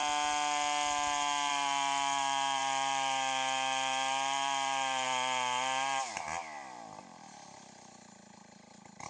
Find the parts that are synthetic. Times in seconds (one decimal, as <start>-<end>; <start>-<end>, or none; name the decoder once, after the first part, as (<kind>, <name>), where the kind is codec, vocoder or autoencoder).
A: 1.5-9.1 (vocoder, BigVGAN v2)